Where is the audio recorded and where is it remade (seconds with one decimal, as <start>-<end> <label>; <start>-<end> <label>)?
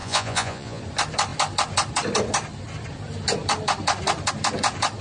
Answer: 0.0-0.8 remade; 0.8-5.0 recorded